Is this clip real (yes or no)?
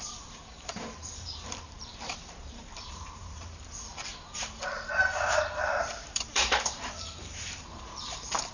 no